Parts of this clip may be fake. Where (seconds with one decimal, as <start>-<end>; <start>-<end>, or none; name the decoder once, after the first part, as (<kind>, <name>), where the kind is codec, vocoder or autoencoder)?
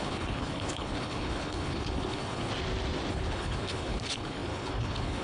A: 0.0-2.5 (codec, HILCodec); 3.1-5.2